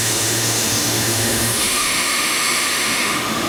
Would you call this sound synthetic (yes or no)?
yes